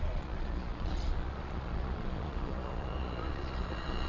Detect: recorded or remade remade